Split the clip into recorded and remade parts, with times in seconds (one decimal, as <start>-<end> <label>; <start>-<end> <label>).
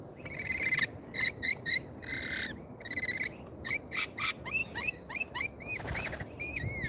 0.0-6.9 recorded